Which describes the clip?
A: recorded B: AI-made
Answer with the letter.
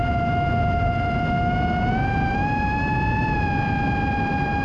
A